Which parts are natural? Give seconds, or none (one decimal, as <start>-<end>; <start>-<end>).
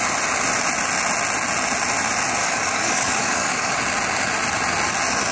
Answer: 0.0-2.4; 3.8-5.3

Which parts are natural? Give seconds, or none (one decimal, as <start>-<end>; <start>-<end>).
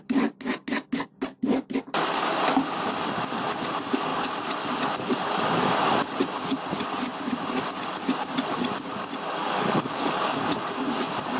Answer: 0.0-9.4; 10.5-11.4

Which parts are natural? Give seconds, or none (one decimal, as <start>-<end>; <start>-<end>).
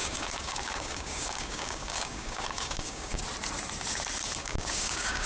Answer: 3.2-4.4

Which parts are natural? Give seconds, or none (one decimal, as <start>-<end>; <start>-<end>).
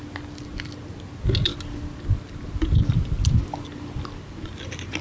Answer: 0.0-5.0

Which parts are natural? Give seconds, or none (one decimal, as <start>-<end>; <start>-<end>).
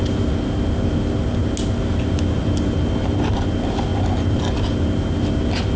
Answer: 0.0-5.8